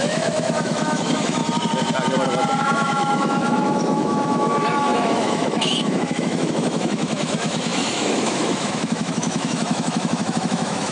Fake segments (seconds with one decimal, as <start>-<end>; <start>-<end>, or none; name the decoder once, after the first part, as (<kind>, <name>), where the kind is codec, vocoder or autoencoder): 0.0-1.4 (autoencoder, DAC-VAE); 2.6-10.9